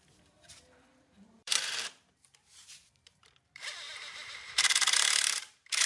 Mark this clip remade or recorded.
remade